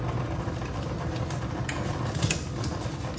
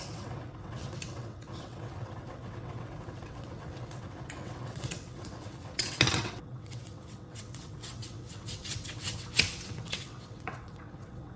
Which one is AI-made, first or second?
second